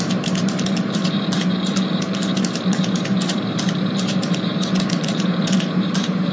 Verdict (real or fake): fake